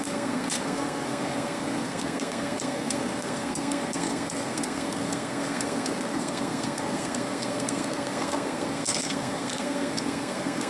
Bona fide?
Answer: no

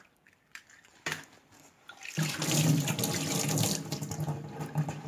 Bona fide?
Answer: no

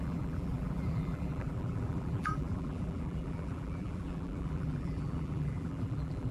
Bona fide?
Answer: no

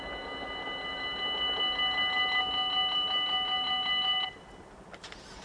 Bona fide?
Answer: yes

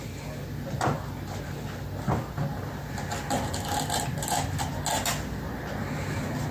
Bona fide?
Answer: yes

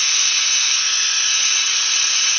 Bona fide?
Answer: yes